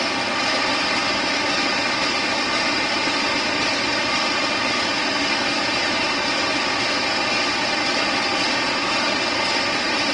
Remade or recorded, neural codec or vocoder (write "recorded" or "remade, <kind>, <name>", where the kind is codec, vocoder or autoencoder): recorded